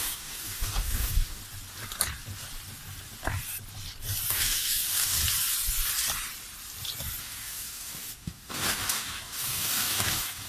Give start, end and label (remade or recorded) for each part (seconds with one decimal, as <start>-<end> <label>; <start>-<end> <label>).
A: 0.0-1.4 remade; 1.4-4.3 recorded; 4.3-5.2 remade; 5.2-7.2 recorded; 7.2-10.5 remade